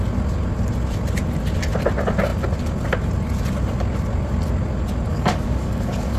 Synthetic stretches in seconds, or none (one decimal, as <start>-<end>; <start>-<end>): 5.1-6.2